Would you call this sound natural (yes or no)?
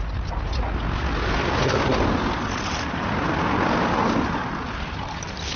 yes